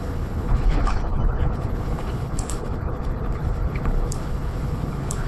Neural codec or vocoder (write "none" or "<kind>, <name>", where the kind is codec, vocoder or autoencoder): codec, HILCodec